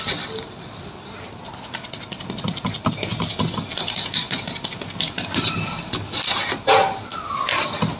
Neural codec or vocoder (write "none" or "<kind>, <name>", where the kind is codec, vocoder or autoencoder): none